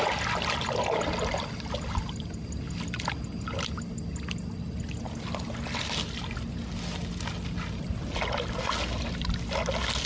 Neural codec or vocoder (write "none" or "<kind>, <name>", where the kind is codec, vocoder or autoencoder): none